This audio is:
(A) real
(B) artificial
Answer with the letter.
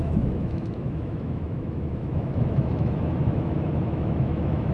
B